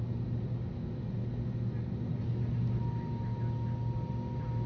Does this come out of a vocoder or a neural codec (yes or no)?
no